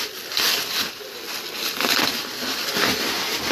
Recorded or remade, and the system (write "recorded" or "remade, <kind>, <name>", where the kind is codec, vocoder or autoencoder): recorded